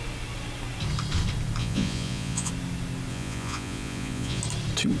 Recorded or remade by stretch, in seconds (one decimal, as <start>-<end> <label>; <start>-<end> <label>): 0.0-1.6 recorded; 1.6-2.5 remade; 2.5-3.1 recorded; 3.1-4.4 remade; 4.4-5.0 recorded

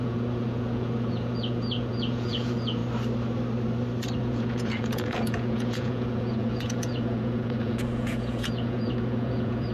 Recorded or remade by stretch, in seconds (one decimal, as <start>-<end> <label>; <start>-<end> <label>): 0.0-2.8 remade; 2.8-4.2 recorded; 4.2-9.7 remade

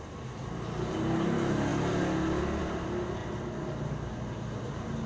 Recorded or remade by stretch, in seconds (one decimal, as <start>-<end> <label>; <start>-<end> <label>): 0.0-5.1 recorded

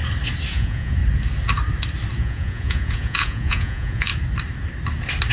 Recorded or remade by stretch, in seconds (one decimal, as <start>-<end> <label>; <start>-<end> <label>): 0.0-0.5 recorded; 0.5-1.0 remade; 1.0-2.2 recorded; 2.2-4.1 remade; 4.1-5.3 recorded

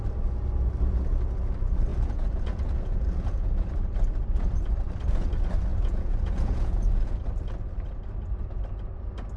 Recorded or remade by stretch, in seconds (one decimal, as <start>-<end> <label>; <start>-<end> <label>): 0.0-1.9 recorded; 1.9-3.7 remade; 3.7-5.7 recorded; 5.7-7.1 remade; 7.1-9.4 recorded

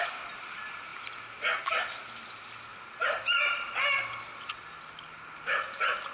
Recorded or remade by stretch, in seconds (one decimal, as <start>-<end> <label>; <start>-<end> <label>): 0.0-6.1 recorded